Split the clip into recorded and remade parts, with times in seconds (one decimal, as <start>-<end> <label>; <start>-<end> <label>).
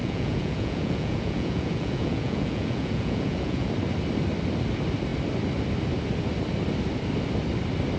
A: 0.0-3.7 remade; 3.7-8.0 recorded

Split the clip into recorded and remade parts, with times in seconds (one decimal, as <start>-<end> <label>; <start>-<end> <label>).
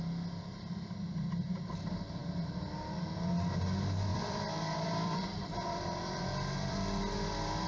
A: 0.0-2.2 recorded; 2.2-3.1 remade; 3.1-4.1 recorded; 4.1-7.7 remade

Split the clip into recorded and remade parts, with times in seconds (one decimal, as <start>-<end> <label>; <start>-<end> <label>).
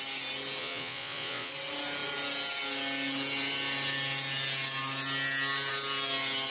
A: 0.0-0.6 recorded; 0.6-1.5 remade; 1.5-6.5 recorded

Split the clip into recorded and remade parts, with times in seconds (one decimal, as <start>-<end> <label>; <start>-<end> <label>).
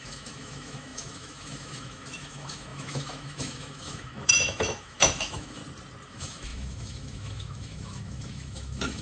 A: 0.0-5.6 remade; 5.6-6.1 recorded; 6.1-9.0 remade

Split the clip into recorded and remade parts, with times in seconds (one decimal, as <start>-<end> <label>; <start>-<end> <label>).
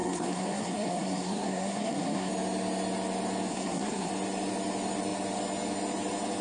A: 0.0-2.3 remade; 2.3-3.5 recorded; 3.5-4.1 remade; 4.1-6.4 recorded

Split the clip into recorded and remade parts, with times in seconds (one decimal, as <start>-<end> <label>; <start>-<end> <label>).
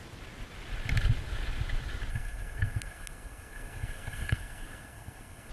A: 0.0-2.1 recorded; 2.1-5.5 remade